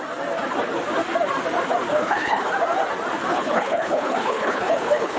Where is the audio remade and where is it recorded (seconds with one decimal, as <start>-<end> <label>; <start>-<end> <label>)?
0.0-1.9 recorded; 1.9-2.5 remade; 2.5-3.3 recorded; 3.3-5.2 remade